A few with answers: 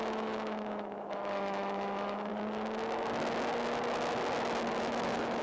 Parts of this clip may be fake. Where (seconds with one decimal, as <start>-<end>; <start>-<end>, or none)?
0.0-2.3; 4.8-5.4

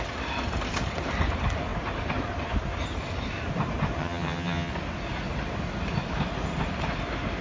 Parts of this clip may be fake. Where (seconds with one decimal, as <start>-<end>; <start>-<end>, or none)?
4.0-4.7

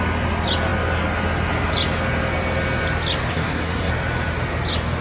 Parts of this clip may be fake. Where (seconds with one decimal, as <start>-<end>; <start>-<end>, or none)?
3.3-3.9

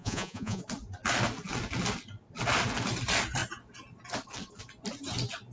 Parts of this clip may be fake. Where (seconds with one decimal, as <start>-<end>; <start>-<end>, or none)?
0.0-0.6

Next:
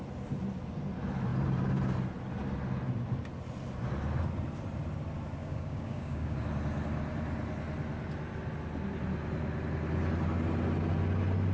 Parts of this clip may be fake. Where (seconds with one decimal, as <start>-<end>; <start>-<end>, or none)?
5.4-6.4

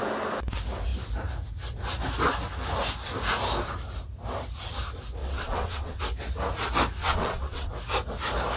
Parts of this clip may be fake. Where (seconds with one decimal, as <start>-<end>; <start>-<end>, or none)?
5.2-6.0; 7.0-7.7

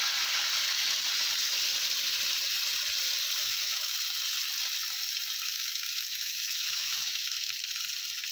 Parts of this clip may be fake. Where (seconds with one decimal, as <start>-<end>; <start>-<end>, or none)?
3.4-3.9; 5.5-7.6